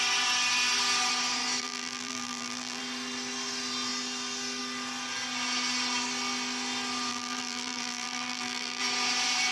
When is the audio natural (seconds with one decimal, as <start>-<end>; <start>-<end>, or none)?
0.0-1.6; 2.8-7.1; 8.8-9.5